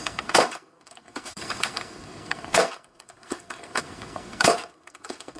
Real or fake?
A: fake